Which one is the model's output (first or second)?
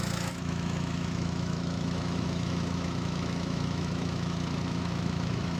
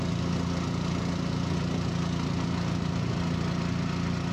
first